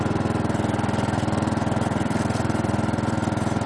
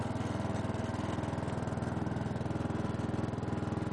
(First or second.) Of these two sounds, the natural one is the second